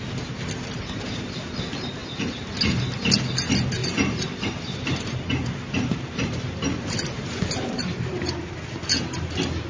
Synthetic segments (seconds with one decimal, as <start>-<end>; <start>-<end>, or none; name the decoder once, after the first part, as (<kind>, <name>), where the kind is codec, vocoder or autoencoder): 3.8-8.3 (vocoder, BigVGAN v2)